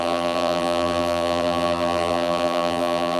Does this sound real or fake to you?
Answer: fake